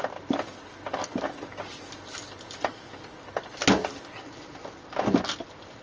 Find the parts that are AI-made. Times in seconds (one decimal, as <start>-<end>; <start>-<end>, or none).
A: none